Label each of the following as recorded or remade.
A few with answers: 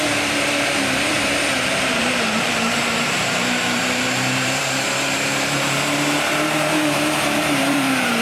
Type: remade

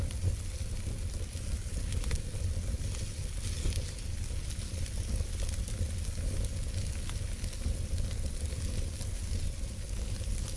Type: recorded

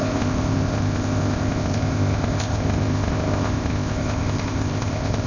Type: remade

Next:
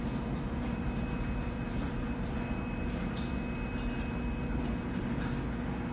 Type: recorded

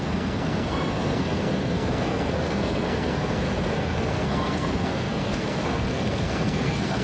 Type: remade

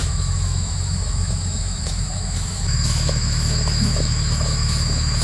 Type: remade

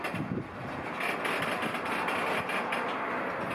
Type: recorded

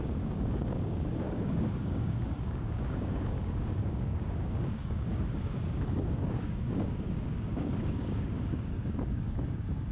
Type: remade